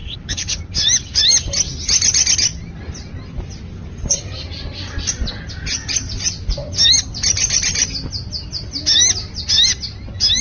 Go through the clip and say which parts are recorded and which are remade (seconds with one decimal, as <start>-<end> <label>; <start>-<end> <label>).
0.0-0.6 remade; 0.6-10.4 recorded